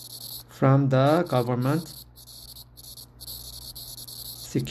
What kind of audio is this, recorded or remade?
recorded